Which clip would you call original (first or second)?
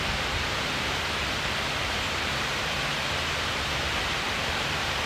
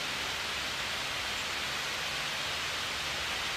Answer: second